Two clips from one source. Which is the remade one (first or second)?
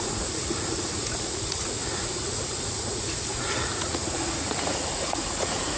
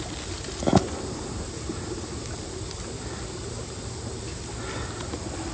first